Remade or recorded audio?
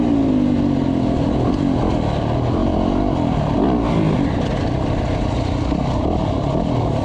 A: recorded